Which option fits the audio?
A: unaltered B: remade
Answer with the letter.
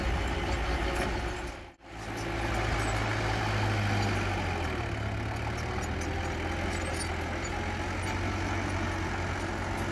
A